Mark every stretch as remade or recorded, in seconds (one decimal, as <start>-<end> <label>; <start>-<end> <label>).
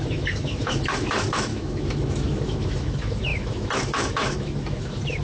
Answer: 0.0-5.2 remade